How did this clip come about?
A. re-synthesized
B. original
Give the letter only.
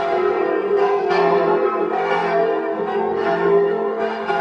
A